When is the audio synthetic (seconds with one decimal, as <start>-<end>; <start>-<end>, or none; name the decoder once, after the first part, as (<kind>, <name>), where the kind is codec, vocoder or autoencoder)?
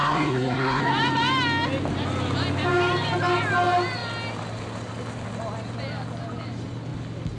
0.0-0.8 (codec, SNAC)